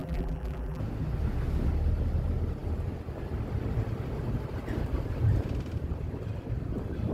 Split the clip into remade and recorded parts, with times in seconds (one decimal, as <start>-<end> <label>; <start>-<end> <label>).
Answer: 0.0-0.8 remade; 0.8-7.1 recorded